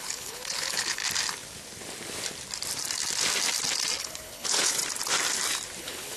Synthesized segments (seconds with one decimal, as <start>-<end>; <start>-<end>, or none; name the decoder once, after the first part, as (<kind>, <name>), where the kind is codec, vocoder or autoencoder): 0.0-1.0 (codec, HILCodec); 4.0-4.8; 5.8-6.2